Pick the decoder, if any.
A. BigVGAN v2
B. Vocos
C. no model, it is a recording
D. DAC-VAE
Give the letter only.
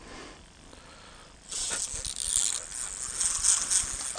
C